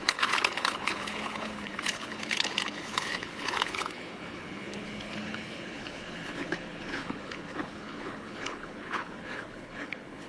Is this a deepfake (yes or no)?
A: yes